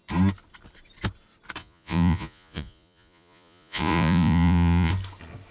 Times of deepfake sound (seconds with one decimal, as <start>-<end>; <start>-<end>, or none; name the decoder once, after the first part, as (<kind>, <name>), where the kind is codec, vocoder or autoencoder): 1.6-4.9 (vocoder, Vocos)